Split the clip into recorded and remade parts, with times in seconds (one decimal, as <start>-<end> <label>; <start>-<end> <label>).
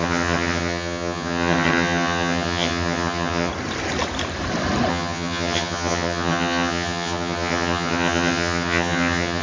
0.0-3.5 remade; 3.5-4.9 recorded; 4.9-9.4 remade